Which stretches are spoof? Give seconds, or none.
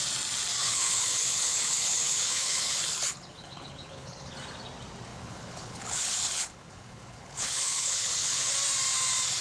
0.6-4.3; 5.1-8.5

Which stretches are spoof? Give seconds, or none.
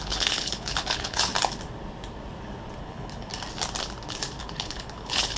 0.0-1.3; 2.8-3.3; 4.4-5.4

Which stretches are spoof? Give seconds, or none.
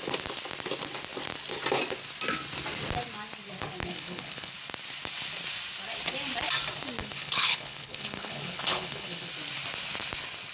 3.8-4.5; 7.0-9.3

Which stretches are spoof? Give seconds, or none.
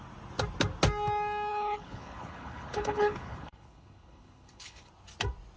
1.5-4.9